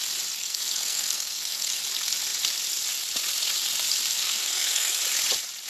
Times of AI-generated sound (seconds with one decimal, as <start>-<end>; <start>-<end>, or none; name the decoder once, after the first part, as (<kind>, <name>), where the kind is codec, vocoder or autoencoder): 0.4-1.8 (codec, SNAC); 4.1-5.0